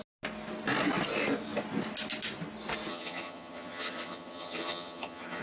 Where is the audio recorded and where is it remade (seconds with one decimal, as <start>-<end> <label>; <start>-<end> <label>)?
0.0-2.9 recorded; 2.9-5.4 remade